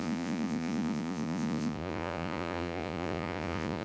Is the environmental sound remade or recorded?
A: remade